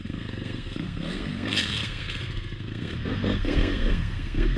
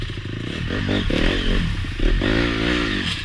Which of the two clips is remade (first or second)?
first